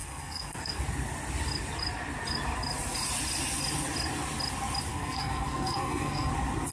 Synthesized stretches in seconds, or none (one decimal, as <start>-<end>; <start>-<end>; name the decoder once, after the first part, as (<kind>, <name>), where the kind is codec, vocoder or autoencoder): 0.0-0.8 (codec, SNAC); 4.9-6.3